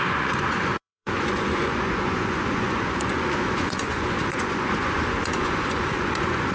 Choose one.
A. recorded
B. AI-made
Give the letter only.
B